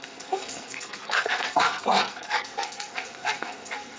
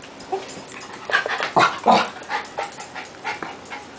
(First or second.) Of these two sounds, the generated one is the first